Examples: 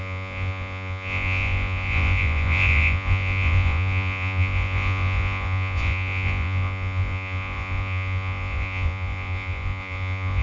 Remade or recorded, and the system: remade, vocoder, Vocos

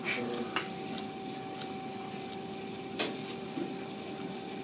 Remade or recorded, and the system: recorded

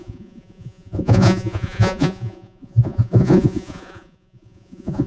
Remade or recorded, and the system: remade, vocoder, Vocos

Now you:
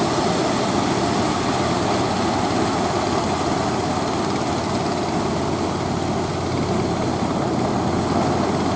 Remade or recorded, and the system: recorded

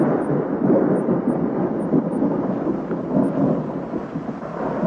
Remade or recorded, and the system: recorded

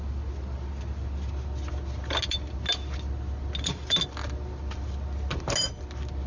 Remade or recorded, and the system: recorded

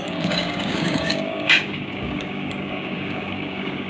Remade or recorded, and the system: remade, codec, DAC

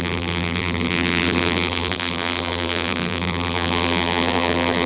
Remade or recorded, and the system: remade, vocoder, BigVGAN v2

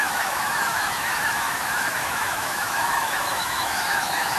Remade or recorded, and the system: remade, autoencoder, DAC-VAE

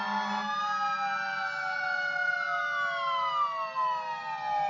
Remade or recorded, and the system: recorded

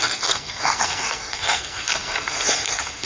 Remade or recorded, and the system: remade, codec, SNAC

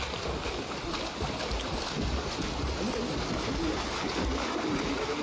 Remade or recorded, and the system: recorded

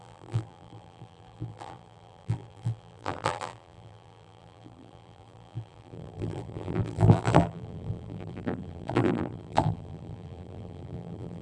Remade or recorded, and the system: remade, vocoder, BigVGAN v2